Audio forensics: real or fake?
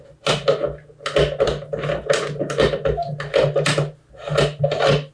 real